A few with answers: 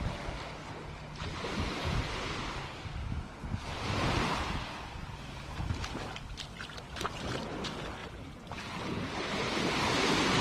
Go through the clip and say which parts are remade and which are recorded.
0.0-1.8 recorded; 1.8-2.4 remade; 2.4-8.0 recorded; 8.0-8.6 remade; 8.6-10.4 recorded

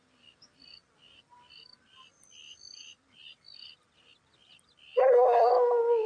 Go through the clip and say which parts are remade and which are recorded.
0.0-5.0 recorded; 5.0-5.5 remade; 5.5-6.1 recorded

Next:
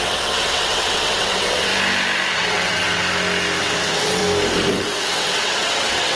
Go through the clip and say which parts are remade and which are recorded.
0.0-1.7 remade; 1.7-2.3 recorded; 2.3-3.0 remade; 3.0-3.6 recorded; 3.6-4.2 remade; 4.2-4.7 recorded; 4.7-6.2 remade

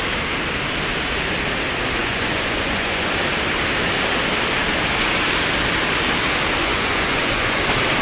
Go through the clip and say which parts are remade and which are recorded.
0.0-2.0 recorded; 2.0-3.1 remade; 3.1-6.6 recorded; 6.6-7.6 remade; 7.6-8.0 recorded